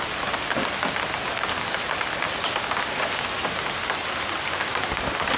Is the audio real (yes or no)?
yes